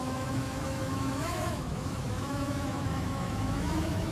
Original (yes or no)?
no